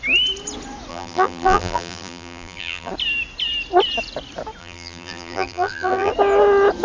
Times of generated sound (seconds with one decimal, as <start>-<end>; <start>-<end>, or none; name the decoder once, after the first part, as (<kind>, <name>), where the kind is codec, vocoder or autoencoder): 0.9-2.9 (vocoder, BigVGAN v2); 4.6-6.1